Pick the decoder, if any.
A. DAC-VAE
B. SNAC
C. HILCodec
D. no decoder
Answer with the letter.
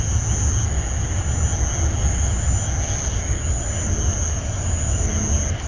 D